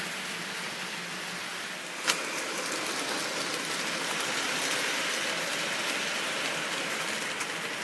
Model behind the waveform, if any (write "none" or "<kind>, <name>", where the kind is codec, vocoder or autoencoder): none